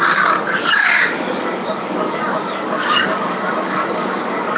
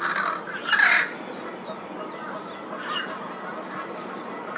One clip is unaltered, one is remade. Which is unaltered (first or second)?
second